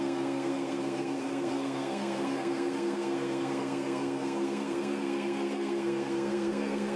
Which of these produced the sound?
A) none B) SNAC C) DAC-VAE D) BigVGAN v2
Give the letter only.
B